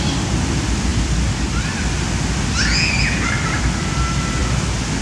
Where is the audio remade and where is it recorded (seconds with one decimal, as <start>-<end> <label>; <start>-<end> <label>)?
0.0-5.0 recorded